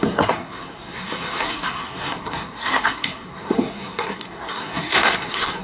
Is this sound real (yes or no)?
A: no